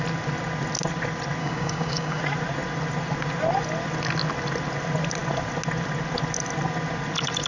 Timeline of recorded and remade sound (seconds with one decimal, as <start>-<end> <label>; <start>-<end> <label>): 0.0-1.4 recorded; 1.4-2.2 remade; 2.2-7.5 recorded